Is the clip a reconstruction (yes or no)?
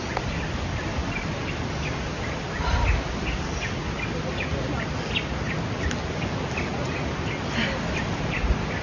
no